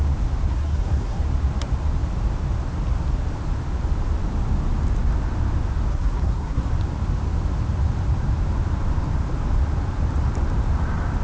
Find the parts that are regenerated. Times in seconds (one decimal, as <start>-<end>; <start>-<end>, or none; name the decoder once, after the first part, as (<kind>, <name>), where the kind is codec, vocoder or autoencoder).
0.5-1.2 (codec, SNAC); 5.9-6.7